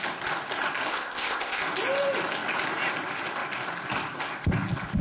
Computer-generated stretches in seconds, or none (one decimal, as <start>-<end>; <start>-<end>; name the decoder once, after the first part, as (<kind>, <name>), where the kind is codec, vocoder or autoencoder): 0.9-1.6 (codec, ZipCodec)